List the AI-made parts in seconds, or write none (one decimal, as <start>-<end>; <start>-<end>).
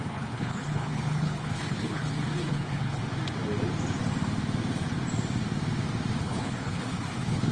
0.0-3.0; 6.2-7.5